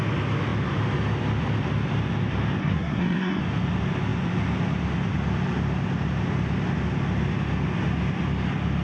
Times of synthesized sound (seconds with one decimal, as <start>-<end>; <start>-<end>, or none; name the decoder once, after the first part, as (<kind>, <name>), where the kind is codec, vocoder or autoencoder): 2.6-3.4 (codec, SNAC)